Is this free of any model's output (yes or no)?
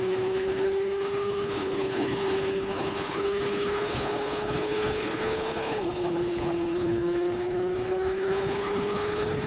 no